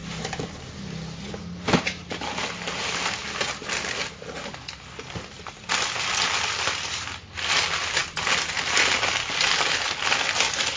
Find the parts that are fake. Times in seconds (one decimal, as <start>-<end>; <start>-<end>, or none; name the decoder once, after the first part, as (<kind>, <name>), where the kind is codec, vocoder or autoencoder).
none